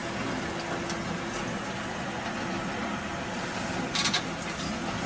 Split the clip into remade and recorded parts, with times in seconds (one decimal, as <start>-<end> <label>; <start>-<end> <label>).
0.0-5.1 recorded